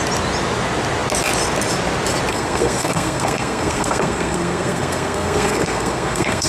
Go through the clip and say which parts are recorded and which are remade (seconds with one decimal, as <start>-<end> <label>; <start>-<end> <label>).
0.0-2.3 recorded; 2.3-6.5 remade